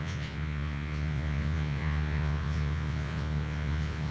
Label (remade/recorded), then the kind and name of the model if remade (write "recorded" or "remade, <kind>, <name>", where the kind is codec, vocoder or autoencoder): remade, vocoder, Vocos